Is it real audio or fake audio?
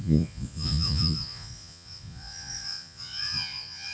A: fake